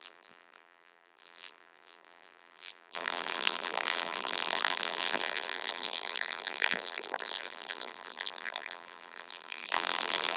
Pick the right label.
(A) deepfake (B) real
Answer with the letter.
A